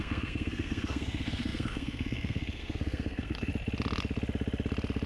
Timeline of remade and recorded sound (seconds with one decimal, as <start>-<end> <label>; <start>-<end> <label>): 0.0-3.5 remade; 3.5-5.1 recorded